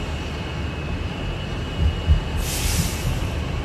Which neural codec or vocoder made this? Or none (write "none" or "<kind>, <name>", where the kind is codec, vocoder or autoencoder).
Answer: none